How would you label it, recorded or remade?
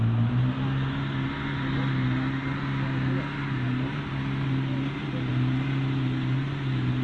recorded